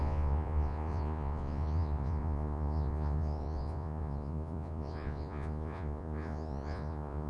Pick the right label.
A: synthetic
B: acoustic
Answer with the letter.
A